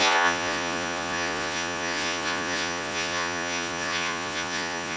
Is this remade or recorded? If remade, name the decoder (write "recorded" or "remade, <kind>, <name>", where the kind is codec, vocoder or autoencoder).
remade, vocoder, Vocos